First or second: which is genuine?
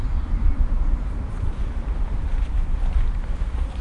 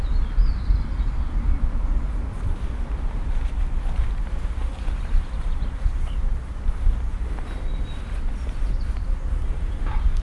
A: second